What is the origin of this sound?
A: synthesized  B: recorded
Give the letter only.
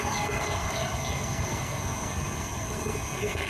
A